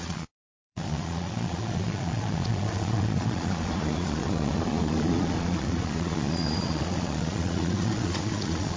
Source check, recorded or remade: remade